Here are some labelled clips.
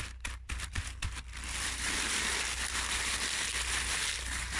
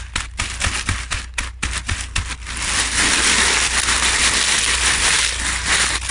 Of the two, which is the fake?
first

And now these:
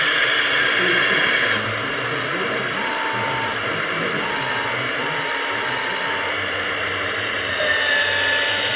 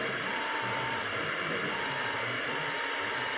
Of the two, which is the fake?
second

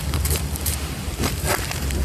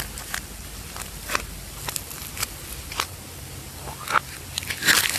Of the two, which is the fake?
first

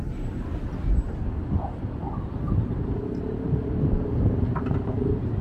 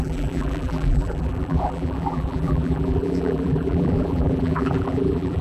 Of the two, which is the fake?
second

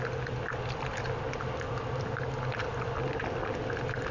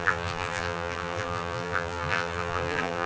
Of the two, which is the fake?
second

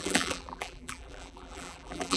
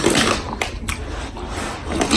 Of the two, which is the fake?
first